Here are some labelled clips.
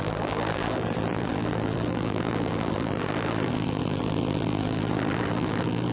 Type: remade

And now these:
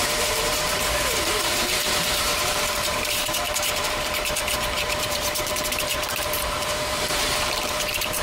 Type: remade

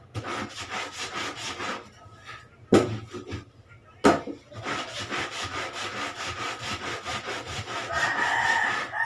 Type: recorded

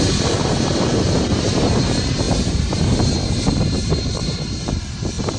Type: remade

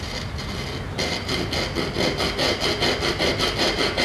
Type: recorded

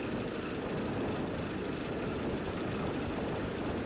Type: recorded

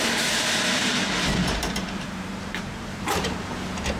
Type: remade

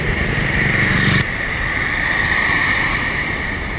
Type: remade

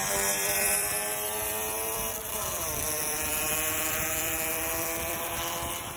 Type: remade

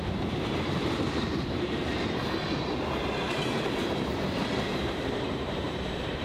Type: remade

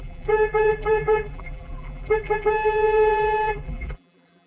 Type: remade